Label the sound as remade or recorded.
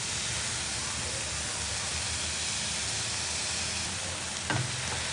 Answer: recorded